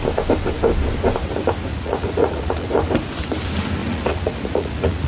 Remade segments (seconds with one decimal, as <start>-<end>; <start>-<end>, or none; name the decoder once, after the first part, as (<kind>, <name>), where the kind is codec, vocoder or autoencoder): 1.7-2.7 (vocoder, Vocos); 3.8-5.1